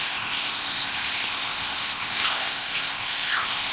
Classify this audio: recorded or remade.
remade